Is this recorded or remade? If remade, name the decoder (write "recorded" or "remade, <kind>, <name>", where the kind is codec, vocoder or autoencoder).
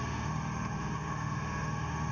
remade, autoencoder, DAC-VAE